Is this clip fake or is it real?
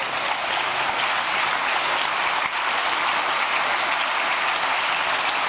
real